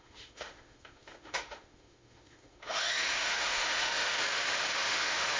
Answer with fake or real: fake